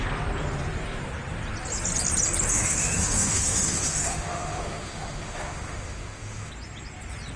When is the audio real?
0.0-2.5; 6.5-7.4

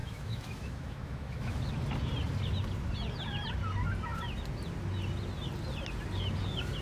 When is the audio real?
1.7-6.8